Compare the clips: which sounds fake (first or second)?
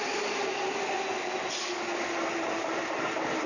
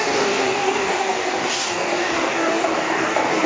second